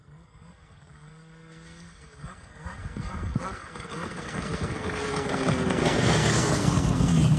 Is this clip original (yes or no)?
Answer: no